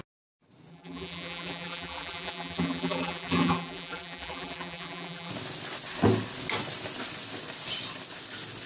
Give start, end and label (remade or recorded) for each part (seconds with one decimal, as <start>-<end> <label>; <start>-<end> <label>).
0.0-0.7 recorded; 0.7-5.3 remade; 5.3-8.7 recorded